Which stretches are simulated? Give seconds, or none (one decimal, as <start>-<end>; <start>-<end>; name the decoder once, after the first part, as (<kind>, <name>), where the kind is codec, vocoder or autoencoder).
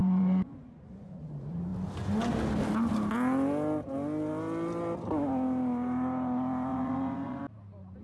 0.0-1.2 (vocoder, Vocos); 6.7-7.4